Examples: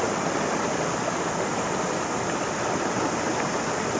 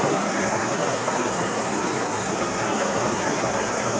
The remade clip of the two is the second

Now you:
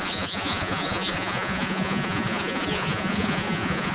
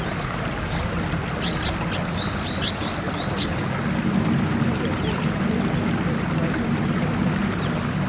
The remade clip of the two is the first